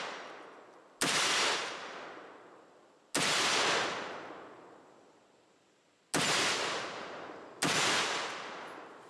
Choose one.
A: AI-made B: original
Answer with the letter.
B